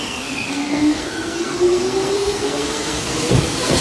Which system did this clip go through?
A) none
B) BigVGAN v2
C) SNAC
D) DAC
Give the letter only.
C